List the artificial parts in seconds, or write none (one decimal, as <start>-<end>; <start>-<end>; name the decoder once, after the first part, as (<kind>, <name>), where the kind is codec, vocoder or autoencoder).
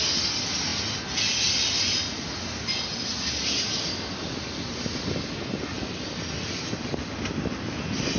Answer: none